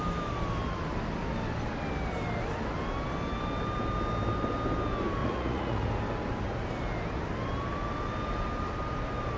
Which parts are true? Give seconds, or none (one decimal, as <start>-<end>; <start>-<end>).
0.0-5.2; 5.9-9.4

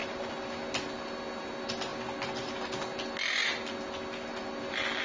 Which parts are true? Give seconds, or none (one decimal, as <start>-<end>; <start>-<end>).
0.0-5.0